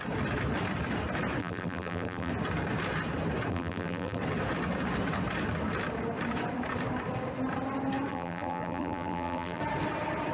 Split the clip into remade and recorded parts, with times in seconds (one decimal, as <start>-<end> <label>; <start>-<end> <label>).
0.0-1.4 recorded; 1.4-2.3 remade; 2.3-3.5 recorded; 3.5-4.2 remade; 4.2-8.1 recorded; 8.1-9.6 remade; 9.6-10.3 recorded